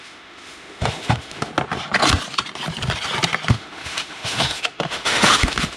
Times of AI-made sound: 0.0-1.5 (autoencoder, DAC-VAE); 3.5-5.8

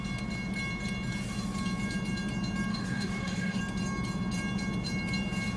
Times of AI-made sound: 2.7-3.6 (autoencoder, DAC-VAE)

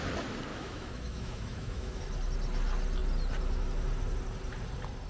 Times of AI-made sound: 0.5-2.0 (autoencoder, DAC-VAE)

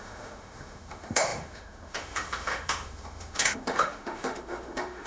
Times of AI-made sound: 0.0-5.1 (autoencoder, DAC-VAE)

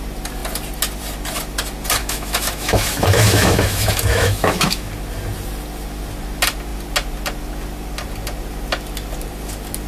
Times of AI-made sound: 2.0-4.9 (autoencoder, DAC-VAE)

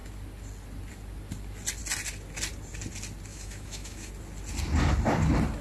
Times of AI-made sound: 3.3-4.1 (autoencoder, DAC-VAE)